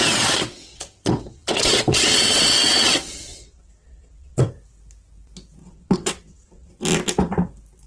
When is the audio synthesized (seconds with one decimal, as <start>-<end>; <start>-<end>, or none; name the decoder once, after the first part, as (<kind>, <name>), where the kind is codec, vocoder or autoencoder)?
0.0-4.5 (vocoder, WaveNeXt); 5.6-6.7